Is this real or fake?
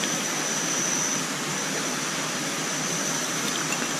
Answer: real